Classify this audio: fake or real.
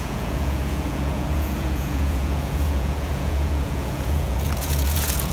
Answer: fake